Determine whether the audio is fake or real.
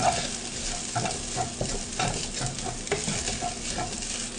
real